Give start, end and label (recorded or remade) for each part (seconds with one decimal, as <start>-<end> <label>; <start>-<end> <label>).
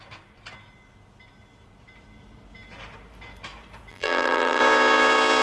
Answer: 0.0-3.9 recorded; 3.9-4.6 remade; 4.6-5.4 recorded